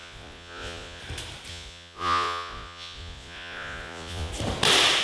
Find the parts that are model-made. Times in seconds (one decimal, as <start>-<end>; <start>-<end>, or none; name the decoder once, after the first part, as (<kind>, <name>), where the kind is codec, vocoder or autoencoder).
0.0-1.0 (vocoder, Vocos); 1.5-4.3